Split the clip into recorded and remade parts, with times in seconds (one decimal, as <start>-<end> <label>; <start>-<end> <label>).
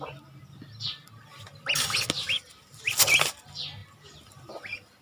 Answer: 0.0-5.0 recorded